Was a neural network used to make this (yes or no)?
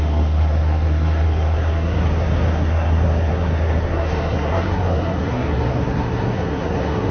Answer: yes